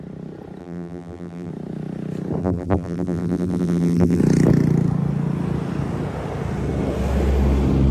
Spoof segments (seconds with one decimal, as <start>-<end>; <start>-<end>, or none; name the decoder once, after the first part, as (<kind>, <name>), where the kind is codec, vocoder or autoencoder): 0.6-1.5 (vocoder, BigVGAN v2); 2.4-4.2

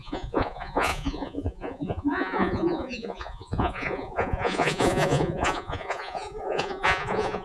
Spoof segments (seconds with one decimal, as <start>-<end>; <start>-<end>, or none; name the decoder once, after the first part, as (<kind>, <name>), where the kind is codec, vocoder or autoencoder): 0.0-7.4 (vocoder, Vocos)

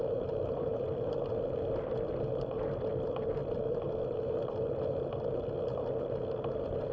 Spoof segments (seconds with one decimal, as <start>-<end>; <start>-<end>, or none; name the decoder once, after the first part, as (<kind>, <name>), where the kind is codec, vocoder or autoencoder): none

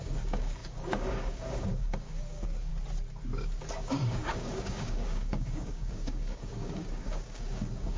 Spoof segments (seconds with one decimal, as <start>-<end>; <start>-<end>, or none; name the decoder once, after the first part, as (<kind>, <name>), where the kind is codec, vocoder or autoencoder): 0.0-2.7 (codec, DAC); 3.7-8.0

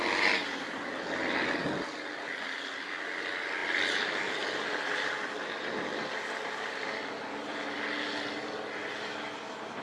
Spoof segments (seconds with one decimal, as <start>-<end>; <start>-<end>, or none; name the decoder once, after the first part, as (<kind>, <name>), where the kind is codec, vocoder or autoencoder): none

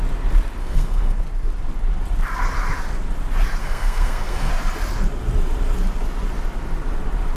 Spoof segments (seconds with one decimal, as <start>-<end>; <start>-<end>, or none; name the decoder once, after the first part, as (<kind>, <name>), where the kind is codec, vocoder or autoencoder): 0.6-1.2 (codec, SNAC); 3.6-4.5

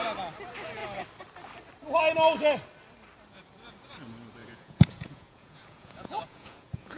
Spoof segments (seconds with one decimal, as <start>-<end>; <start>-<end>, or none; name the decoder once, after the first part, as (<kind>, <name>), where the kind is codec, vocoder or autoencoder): 4.4-7.0 (vocoder, Vocos)